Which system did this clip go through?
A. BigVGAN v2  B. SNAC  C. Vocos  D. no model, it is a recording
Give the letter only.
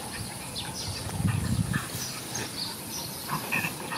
D